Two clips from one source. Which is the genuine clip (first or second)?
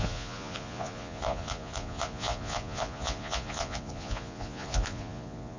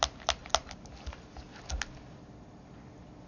second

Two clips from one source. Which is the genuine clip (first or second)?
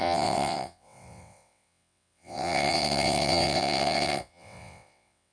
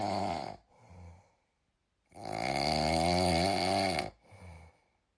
second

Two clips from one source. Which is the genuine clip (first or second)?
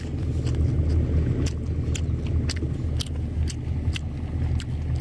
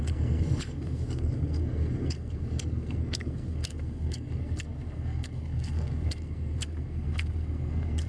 first